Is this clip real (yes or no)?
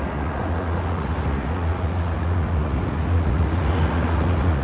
no